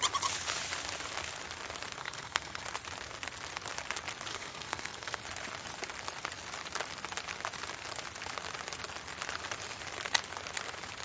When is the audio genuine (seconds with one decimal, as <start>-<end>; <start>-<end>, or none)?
0.0-2.0; 2.6-4.3; 5.2-11.0